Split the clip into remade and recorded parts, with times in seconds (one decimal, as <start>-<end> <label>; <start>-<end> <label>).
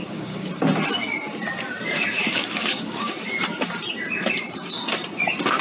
0.0-0.5 remade; 0.5-2.2 recorded; 2.2-3.1 remade; 3.1-5.6 recorded